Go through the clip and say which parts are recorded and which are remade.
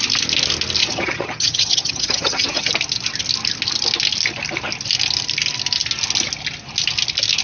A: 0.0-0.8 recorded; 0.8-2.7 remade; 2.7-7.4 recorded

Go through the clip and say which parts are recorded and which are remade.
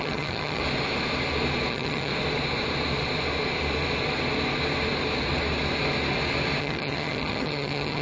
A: 0.0-0.6 remade; 0.6-1.7 recorded; 1.7-2.1 remade; 2.1-6.6 recorded; 6.6-8.0 remade